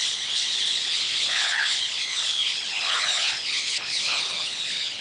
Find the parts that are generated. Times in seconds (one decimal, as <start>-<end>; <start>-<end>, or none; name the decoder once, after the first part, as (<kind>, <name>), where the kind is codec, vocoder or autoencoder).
0.0-5.0 (codec, HILCodec)